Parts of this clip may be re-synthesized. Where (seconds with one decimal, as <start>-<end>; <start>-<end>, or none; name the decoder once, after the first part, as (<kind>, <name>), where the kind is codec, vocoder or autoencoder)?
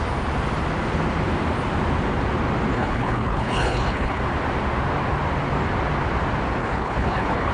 2.7-4.2 (codec, HILCodec); 6.6-7.5